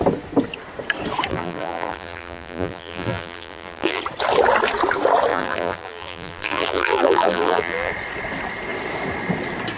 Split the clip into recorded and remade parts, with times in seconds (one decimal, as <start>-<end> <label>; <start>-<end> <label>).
0.0-1.3 recorded; 1.3-4.0 remade; 4.0-5.3 recorded; 5.3-7.9 remade; 7.9-9.8 recorded